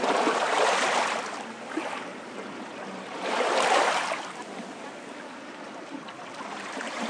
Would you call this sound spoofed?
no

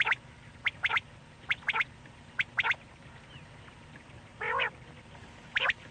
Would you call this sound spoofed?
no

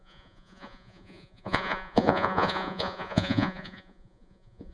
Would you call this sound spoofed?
yes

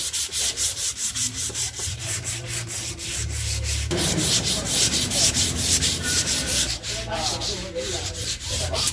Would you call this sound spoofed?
yes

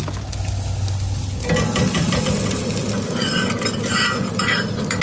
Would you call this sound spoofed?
no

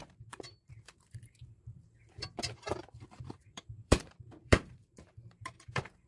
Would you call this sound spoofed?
yes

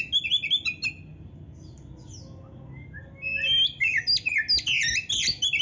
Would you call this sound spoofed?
no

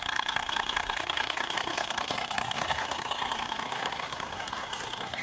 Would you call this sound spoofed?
yes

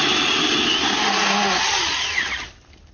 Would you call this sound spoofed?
no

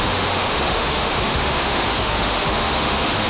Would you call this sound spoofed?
yes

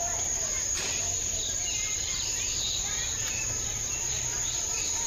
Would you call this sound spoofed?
yes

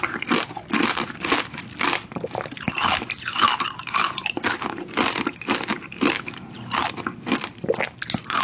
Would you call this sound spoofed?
no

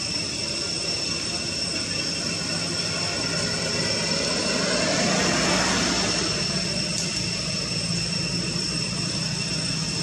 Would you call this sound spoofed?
no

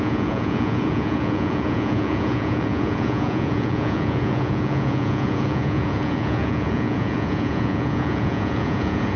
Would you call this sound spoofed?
yes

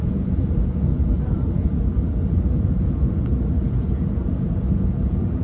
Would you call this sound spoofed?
yes